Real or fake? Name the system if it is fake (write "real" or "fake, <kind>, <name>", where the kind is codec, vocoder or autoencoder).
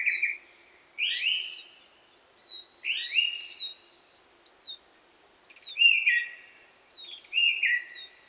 real